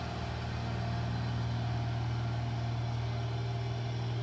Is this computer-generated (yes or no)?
no